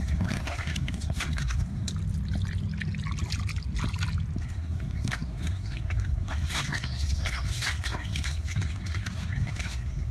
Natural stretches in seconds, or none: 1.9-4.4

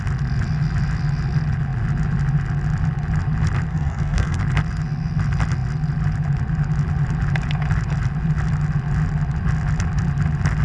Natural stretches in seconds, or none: 0.0-3.7; 4.4-10.6

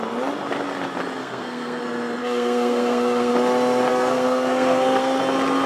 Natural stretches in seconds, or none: 0.0-1.2; 1.8-2.2; 3.3-3.9; 5.2-5.7

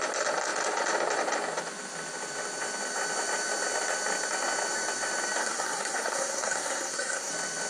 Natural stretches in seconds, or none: 0.0-5.4; 7.3-7.7

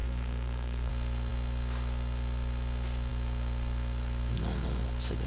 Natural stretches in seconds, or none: 0.9-5.3